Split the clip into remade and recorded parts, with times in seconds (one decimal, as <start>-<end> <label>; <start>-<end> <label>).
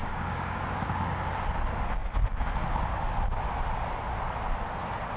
0.0-1.3 remade; 1.3-5.2 recorded